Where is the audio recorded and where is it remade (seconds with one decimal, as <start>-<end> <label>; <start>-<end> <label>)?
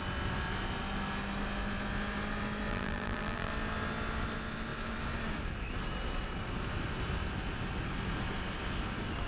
0.0-2.7 recorded; 2.7-3.5 remade; 3.5-9.3 recorded